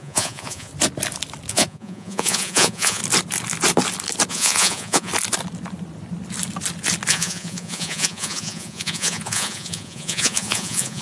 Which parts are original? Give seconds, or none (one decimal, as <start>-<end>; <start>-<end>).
0.7-1.5; 3.0-4.3; 5.1-7.1